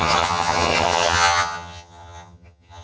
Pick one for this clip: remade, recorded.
remade